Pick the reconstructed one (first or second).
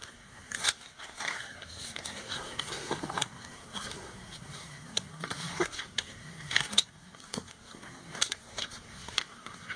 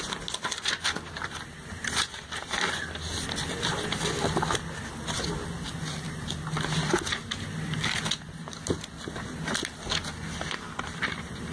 first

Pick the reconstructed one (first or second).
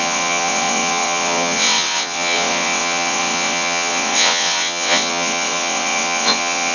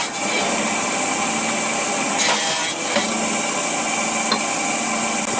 first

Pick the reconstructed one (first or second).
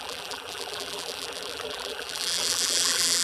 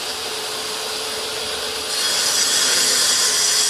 first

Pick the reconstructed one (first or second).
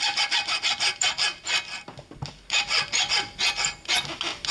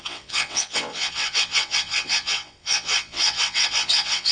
second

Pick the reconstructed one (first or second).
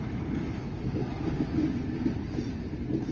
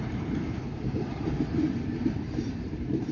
second